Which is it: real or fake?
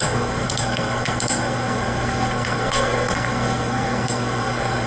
fake